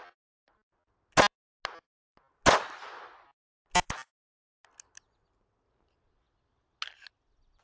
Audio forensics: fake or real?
real